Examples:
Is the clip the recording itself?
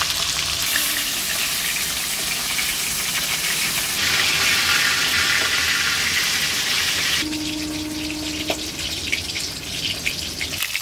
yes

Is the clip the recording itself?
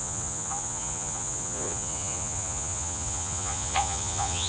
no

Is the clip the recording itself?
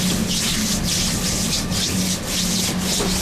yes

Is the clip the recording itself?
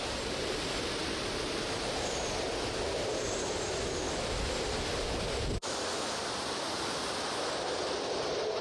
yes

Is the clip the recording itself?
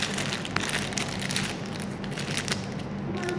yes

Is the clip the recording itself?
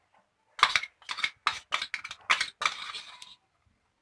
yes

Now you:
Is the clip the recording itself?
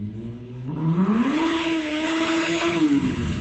no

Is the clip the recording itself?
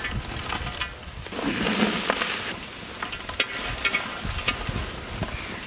yes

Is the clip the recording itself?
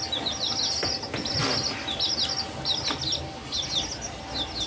yes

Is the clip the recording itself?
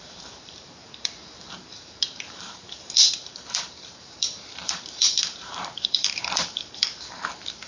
no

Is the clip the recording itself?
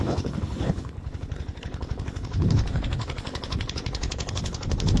no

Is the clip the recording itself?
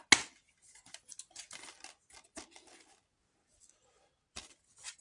yes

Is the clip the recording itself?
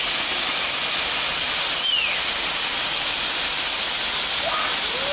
yes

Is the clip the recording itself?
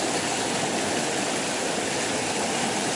yes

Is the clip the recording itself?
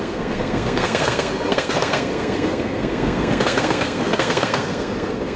no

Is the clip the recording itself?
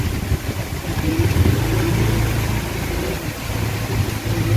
no